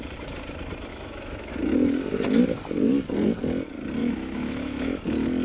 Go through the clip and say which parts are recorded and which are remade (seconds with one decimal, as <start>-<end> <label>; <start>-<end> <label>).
0.0-0.9 recorded; 0.9-1.5 remade; 1.5-4.0 recorded; 4.0-5.0 remade; 5.0-5.4 recorded